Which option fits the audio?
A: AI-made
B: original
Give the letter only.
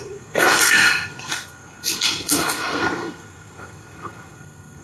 A